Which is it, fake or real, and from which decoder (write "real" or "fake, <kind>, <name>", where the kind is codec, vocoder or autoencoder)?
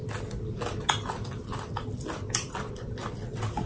real